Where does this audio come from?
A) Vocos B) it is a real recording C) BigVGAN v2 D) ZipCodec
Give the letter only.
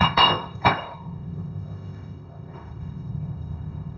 D